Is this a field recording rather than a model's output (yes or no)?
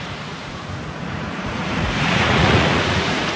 no